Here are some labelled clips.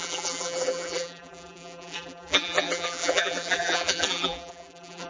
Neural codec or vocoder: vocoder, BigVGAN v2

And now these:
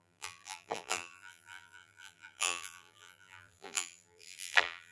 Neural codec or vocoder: vocoder, BigVGAN v2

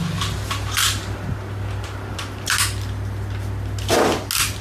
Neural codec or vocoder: none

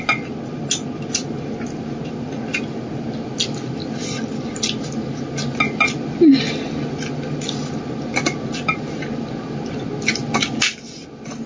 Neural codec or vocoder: none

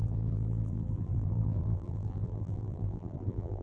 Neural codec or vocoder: vocoder, BigVGAN v2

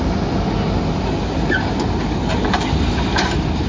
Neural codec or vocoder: none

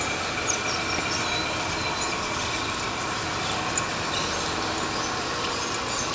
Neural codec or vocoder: none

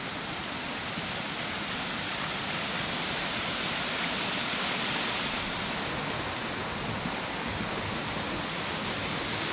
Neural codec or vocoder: none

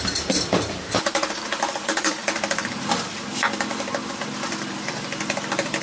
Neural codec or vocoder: vocoder, BigVGAN v2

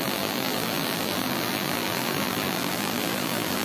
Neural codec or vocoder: vocoder, BigVGAN v2